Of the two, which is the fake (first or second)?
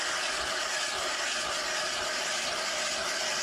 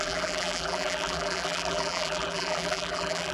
second